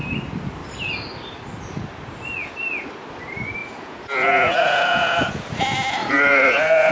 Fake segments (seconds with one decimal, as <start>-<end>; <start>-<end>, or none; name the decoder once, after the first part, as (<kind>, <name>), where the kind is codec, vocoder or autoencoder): 3.6-5.4 (vocoder, Vocos); 6.0-6.9